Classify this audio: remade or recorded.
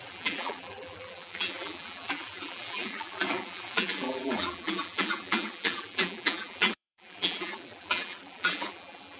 remade